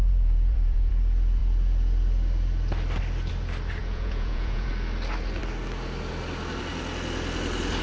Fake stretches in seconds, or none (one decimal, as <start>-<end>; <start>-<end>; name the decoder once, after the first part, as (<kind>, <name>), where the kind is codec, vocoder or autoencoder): 0.0-0.9 (vocoder, Vocos); 3.8-4.7